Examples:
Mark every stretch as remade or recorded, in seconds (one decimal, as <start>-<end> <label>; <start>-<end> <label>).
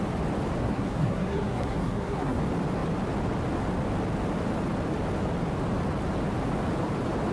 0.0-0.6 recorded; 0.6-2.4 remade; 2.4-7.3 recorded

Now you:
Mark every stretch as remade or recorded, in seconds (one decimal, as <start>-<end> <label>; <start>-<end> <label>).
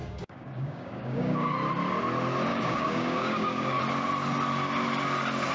0.0-1.5 remade; 1.5-2.5 recorded; 2.5-3.8 remade; 3.8-5.5 recorded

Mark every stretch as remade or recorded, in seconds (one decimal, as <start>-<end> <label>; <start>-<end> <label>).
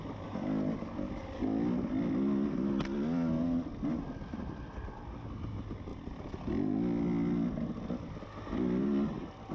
0.0-9.5 recorded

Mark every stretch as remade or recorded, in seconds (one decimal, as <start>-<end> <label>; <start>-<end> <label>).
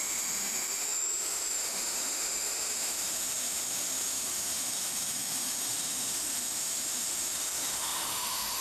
0.0-8.6 remade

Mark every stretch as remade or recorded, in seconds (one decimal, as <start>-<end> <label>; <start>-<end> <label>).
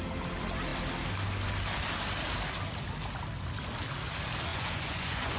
0.0-4.5 recorded; 4.5-5.4 remade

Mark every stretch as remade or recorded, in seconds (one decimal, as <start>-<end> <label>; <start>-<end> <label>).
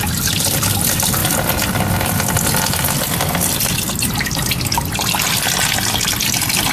0.0-6.7 recorded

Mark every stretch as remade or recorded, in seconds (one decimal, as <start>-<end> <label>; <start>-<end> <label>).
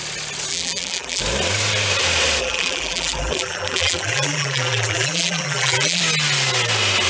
0.0-0.5 recorded; 0.5-1.2 remade; 1.2-2.4 recorded; 2.4-6.0 remade; 6.0-7.1 recorded